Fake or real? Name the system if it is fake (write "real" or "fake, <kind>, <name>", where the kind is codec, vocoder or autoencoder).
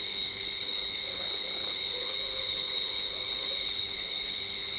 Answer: fake, codec, HILCodec